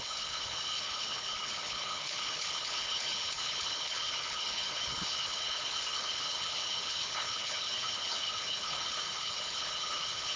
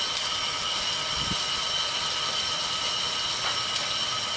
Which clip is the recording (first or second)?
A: second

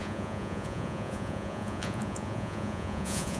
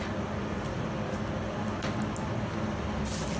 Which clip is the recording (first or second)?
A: second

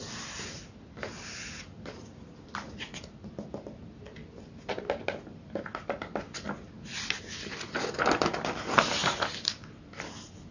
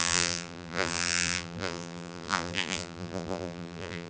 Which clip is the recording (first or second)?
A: first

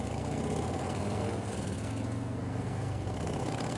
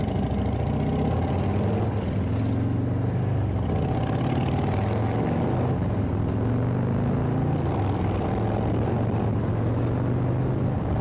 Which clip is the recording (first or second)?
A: second